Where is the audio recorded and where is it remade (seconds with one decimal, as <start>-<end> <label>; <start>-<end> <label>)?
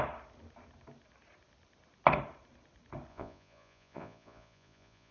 0.0-3.1 recorded; 3.1-5.1 remade